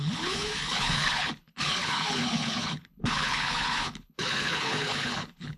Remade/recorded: remade